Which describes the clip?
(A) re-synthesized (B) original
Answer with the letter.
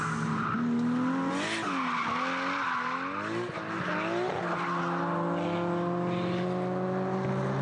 B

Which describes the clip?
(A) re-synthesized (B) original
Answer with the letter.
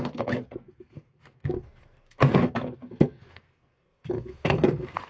A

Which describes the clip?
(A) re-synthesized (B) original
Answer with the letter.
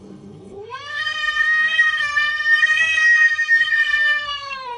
A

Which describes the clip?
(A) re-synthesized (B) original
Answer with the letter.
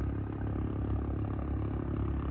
B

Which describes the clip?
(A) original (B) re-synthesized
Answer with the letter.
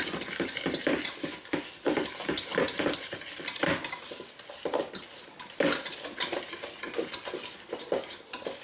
A